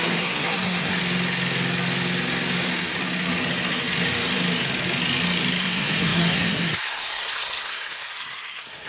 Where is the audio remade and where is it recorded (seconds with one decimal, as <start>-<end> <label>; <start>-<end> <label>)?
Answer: 0.0-1.0 remade; 1.0-5.6 recorded; 5.6-8.9 remade